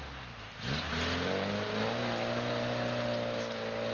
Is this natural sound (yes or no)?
yes